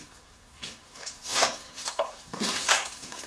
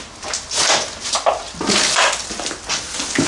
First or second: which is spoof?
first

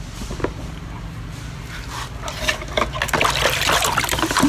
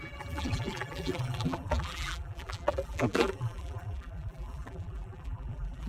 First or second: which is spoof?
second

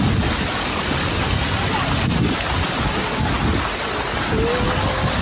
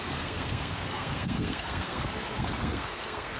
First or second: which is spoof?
second